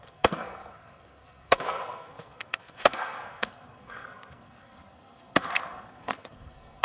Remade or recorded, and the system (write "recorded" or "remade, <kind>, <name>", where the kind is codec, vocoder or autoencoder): remade, codec, SNAC